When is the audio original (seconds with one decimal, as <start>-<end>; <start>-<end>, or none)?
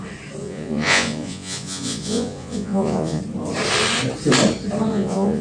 0.0-0.4; 3.2-4.9